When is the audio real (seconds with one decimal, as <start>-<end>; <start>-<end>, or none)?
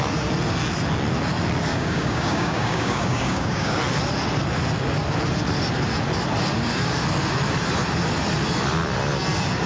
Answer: 0.0-1.7; 3.8-9.7